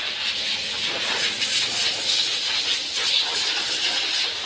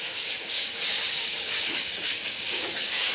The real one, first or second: first